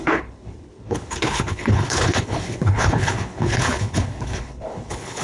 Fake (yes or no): yes